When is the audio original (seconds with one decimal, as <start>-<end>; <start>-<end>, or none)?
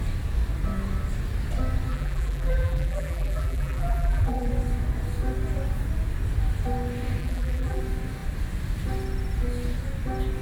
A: 0.0-1.9; 4.5-7.2; 7.8-10.4